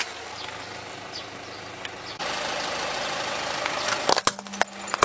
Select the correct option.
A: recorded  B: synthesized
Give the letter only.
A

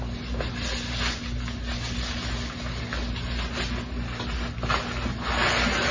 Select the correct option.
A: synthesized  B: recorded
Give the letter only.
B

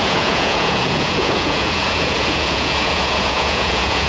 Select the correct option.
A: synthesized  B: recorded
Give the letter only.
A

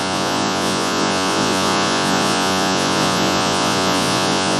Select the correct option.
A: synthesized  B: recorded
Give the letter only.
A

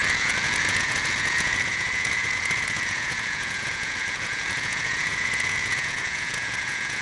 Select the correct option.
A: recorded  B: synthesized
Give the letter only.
B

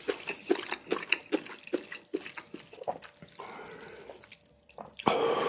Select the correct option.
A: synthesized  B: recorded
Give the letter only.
B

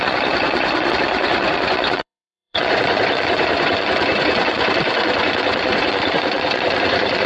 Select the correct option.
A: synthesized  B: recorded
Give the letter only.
A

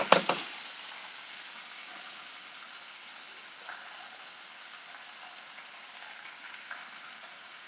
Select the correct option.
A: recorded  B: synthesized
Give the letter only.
A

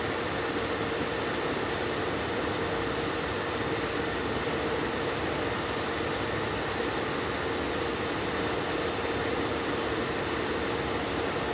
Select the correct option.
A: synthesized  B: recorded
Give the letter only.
B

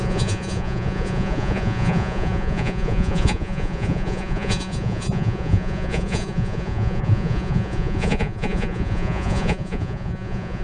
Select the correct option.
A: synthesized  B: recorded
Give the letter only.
A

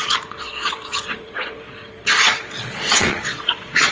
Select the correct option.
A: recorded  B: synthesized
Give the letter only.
B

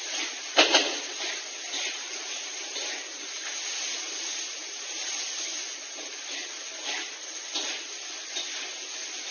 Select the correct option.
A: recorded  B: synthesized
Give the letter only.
A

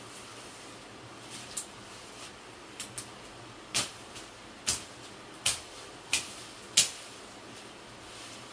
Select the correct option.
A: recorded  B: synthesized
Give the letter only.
A